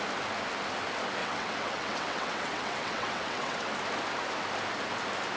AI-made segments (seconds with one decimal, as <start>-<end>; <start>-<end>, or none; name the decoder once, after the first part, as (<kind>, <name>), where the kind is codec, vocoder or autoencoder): 1.2-3.7 (vocoder, WaveNeXt)